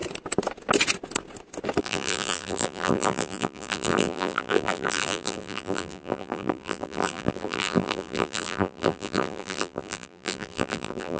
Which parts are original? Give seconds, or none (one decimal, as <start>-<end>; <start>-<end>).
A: 0.0-1.8

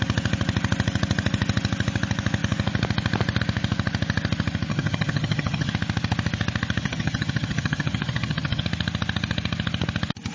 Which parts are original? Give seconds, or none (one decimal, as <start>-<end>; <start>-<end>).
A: 0.0-4.7; 5.7-6.8; 8.6-10.3

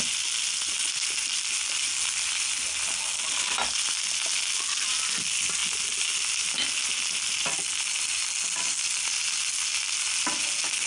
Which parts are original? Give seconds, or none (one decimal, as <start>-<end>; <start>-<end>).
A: 0.0-10.9

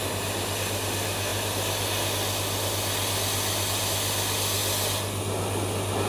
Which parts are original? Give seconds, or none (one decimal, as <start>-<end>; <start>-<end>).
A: 0.0-6.1

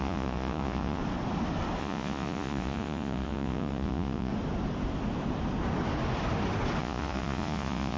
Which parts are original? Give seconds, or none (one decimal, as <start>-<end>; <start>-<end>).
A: 1.0-1.8; 4.3-6.8

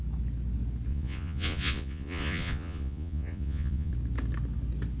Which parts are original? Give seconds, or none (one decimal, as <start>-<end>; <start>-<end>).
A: 0.0-0.9; 3.9-5.0

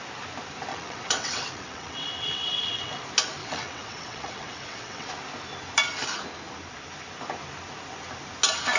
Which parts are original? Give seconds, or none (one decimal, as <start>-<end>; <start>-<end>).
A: 0.0-0.7; 3.0-3.4; 5.1-8.8